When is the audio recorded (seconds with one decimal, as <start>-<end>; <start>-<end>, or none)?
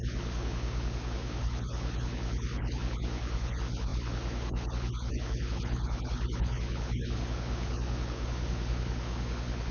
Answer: none